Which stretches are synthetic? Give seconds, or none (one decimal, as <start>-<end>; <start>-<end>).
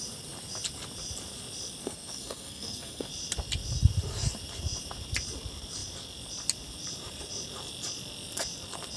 1.8-3.1